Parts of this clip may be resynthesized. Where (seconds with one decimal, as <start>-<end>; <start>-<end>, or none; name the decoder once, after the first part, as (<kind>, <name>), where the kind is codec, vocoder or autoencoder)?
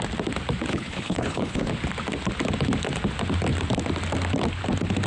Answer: 0.7-1.7 (codec, HILCodec)